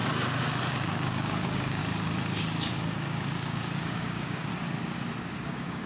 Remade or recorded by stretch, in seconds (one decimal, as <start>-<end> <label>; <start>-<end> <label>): 0.0-0.7 recorded; 0.7-1.8 remade; 1.8-2.7 recorded; 2.7-4.5 remade; 4.5-5.2 recorded; 5.2-5.9 remade